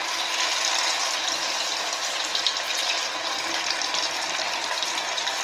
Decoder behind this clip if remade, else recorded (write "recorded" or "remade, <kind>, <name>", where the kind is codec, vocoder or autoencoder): recorded